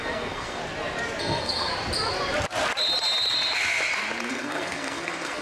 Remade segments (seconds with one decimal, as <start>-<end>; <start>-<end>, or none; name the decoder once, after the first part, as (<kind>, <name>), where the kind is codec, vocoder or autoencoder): 0.0-0.6 (codec, SNAC); 1.2-1.7; 4.3-5.4